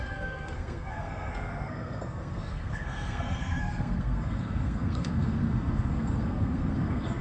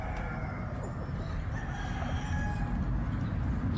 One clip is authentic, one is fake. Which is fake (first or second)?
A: first